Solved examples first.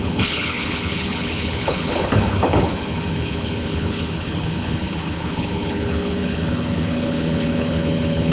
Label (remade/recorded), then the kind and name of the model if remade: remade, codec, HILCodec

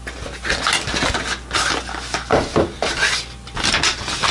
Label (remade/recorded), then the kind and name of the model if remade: recorded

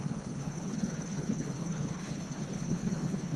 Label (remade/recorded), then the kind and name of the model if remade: remade, codec, HILCodec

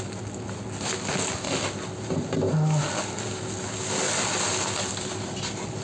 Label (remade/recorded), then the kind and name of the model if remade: recorded